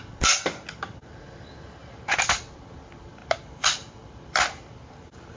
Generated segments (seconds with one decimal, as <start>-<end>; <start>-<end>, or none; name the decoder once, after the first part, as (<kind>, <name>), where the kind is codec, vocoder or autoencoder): 1.8-2.6 (vocoder, BigVGAN v2); 3.2-5.4